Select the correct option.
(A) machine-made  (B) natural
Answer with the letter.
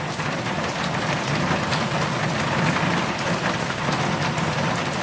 B